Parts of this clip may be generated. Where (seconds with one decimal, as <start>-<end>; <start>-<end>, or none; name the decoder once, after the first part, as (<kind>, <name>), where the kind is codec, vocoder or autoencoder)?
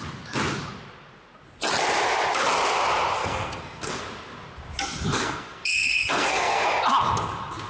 3.2-4.0 (codec, SNAC); 5.1-6.8